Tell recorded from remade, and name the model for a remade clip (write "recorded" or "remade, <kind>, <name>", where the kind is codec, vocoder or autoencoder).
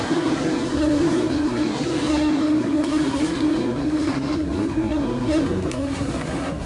remade, codec, SNAC